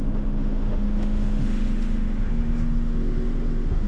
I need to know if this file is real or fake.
fake